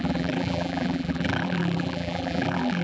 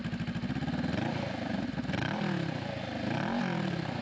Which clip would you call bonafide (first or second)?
second